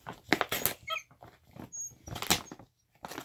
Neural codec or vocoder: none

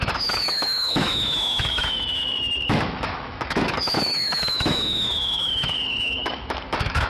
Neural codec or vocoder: autoencoder, DAC-VAE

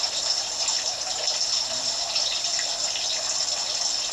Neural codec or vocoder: none